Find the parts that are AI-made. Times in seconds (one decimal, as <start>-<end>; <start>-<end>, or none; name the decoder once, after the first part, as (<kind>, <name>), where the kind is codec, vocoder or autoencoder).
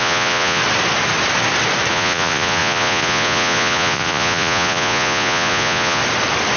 0.0-0.6 (vocoder, Vocos); 1.9-6.0